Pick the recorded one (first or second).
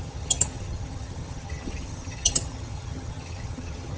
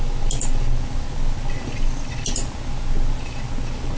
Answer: second